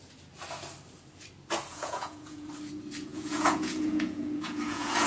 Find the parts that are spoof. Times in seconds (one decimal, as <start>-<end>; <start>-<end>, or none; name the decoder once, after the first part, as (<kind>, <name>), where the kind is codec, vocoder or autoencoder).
1.7-2.5 (vocoder, Vocos); 3.1-5.1